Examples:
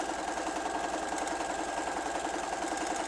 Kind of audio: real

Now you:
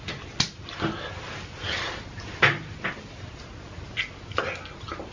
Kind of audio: real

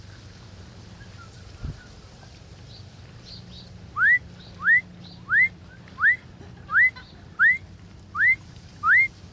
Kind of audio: real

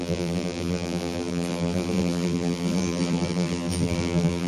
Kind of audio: fake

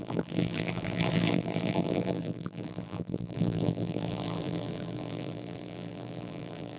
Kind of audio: fake